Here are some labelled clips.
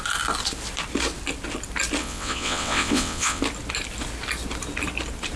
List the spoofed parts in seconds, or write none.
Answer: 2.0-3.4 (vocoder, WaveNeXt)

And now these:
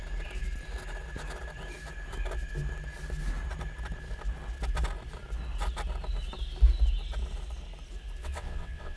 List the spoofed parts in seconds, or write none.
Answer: 8.2-9.0 (vocoder, WaveNeXt)

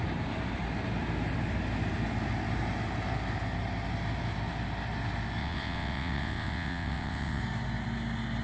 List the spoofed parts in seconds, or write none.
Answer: 5.4-7.4 (vocoder, WaveNeXt)

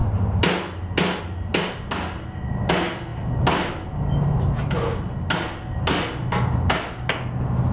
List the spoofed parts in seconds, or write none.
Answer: none